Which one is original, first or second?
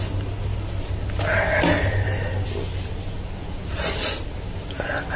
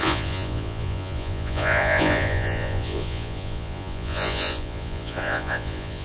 first